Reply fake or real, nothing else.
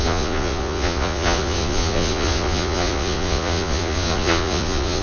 fake